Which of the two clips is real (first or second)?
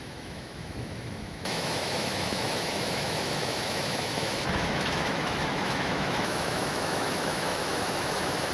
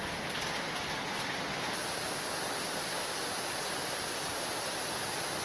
second